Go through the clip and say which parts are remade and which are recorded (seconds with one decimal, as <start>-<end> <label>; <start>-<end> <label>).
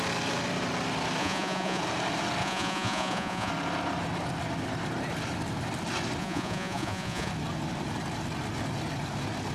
0.0-1.2 recorded; 1.2-1.8 remade; 1.8-2.4 recorded; 2.4-3.5 remade; 3.5-6.2 recorded; 6.2-7.3 remade; 7.3-9.5 recorded